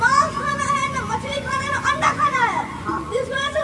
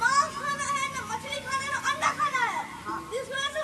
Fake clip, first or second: first